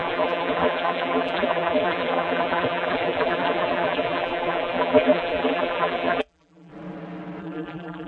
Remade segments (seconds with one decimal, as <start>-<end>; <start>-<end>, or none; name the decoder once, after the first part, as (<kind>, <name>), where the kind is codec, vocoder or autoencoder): 0.0-6.7 (vocoder, BigVGAN v2); 7.4-8.1